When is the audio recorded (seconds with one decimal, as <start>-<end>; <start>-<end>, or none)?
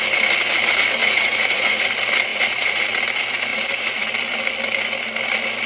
0.0-1.0; 1.9-2.3; 2.8-3.5; 4.1-5.7